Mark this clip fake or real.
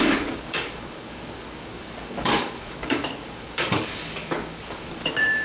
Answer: fake